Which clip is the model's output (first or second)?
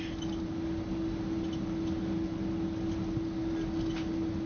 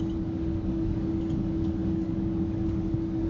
second